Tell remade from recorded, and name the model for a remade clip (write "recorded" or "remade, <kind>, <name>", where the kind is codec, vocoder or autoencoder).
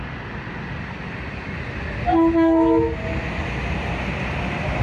recorded